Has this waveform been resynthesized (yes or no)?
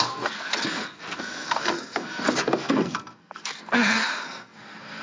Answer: yes